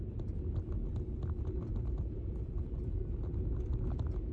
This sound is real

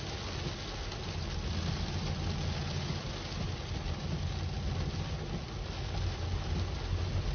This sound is real